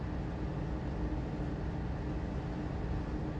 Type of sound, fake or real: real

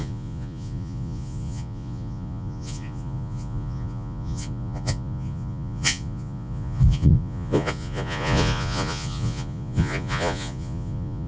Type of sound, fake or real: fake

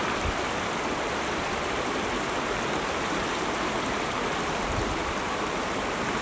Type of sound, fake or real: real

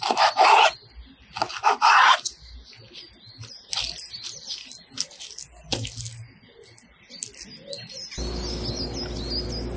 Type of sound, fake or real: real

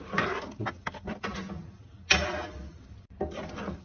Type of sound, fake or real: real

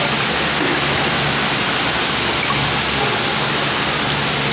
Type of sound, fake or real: real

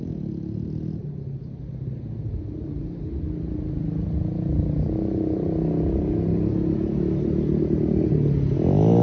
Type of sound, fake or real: real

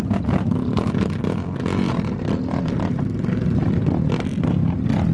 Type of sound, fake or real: real